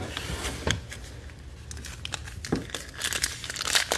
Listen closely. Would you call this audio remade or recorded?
recorded